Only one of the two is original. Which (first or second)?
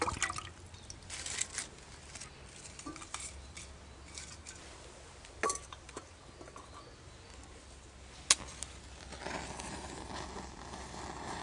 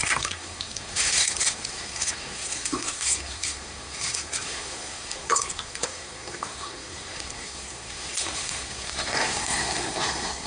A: first